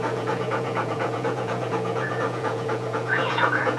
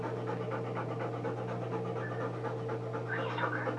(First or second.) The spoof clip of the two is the first